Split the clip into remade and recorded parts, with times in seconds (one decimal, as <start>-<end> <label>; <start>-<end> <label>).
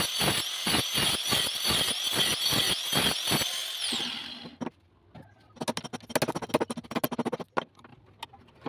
0.0-8.7 recorded